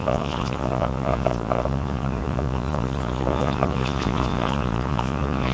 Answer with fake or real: fake